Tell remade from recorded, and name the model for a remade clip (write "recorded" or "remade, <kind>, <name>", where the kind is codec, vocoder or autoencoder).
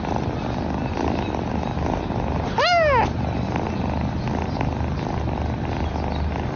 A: recorded